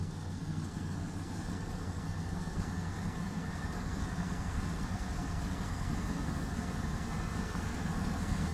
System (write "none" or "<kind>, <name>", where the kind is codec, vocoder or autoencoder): codec, SNAC